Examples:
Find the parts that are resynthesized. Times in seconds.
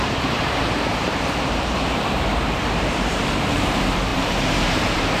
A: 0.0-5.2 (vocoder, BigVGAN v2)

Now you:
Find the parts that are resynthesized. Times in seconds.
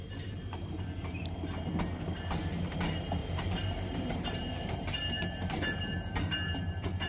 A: 3.2-7.1 (vocoder, BigVGAN v2)